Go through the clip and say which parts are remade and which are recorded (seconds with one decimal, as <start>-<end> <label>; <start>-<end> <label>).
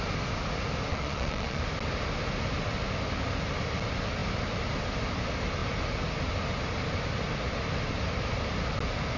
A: 0.0-0.9 recorded; 0.9-1.6 remade; 1.6-9.2 recorded